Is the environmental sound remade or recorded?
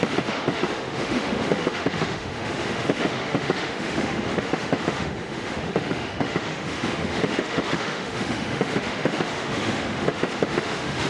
remade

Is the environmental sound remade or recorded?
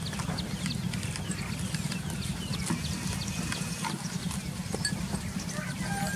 recorded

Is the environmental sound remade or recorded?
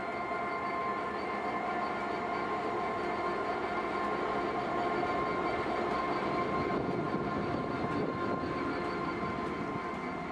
recorded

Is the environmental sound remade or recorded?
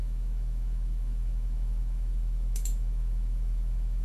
remade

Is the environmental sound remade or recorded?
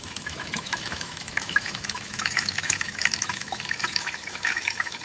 remade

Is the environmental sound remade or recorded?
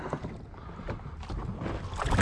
recorded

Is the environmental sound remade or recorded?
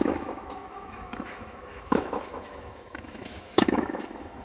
remade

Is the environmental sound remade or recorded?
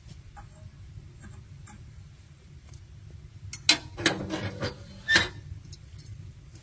recorded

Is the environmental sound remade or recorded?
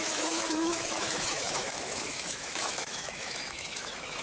remade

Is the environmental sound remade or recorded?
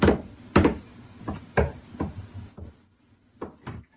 recorded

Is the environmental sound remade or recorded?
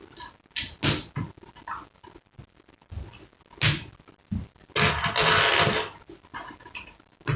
recorded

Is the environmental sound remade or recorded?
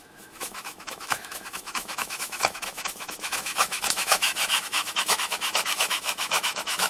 remade